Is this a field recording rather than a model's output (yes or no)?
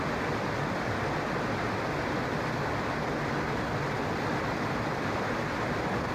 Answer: yes